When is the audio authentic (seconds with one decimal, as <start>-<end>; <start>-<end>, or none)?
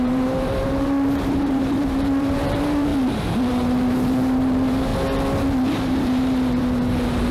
2.9-3.5; 4.9-5.7